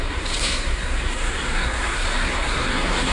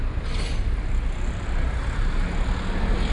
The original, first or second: second